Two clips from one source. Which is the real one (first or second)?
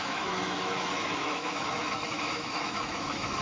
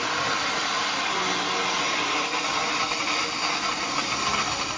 second